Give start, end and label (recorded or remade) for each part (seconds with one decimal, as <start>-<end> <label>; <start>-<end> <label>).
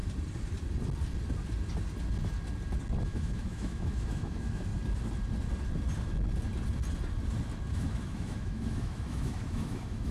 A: 0.0-3.0 recorded; 3.0-4.7 remade; 4.7-7.7 recorded; 7.7-10.1 remade